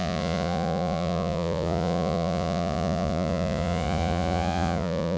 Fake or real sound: fake